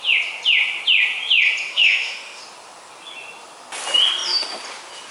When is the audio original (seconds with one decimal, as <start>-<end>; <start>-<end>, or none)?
0.0-1.7; 2.4-5.1